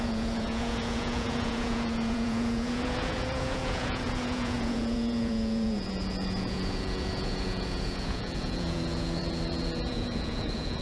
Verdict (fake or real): fake